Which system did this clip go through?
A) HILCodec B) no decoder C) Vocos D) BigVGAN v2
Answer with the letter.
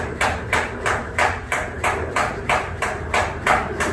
D